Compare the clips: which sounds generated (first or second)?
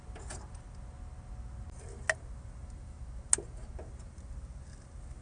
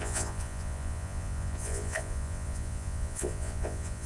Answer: second